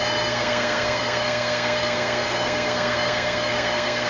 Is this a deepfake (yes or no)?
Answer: yes